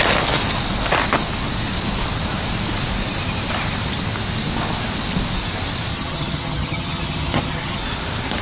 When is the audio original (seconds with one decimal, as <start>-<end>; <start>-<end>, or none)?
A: 0.0-5.9; 7.8-8.4